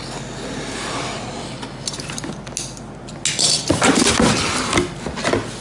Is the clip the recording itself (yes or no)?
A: yes